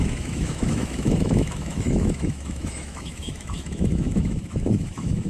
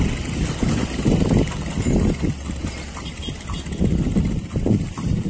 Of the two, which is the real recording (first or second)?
second